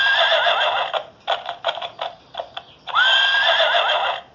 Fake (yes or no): no